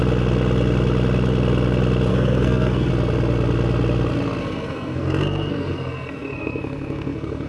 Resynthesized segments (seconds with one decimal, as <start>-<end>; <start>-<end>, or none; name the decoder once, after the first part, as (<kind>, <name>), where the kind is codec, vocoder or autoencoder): 2.1-2.9 (codec, SNAC); 4.4-7.5